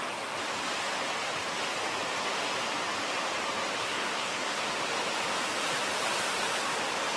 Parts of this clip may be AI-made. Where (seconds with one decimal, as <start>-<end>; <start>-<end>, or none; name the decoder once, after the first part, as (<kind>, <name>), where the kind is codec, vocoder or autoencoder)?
3.8-4.6 (codec, SNAC)